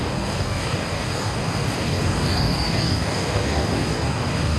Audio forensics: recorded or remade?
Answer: remade